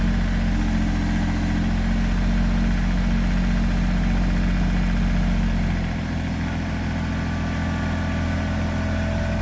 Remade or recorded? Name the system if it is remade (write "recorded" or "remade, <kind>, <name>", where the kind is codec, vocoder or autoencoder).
recorded